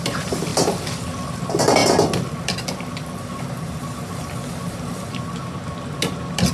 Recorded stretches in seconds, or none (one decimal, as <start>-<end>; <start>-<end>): 0.0-6.5